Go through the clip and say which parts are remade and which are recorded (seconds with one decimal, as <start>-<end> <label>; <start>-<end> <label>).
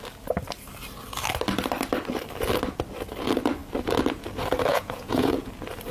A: 0.0-4.7 recorded; 4.7-5.5 remade; 5.5-5.9 recorded